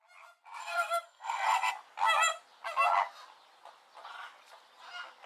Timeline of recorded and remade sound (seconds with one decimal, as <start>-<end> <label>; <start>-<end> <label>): 0.0-0.6 recorded; 0.6-1.7 remade; 1.7-5.3 recorded